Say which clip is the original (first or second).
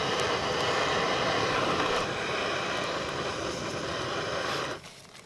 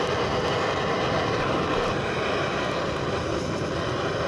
second